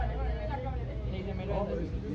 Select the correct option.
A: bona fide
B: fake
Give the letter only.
A